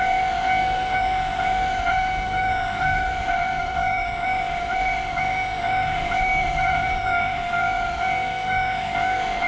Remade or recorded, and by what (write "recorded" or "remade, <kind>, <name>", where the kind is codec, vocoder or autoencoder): remade, autoencoder, DAC-VAE